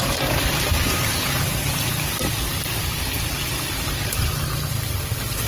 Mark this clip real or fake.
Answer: fake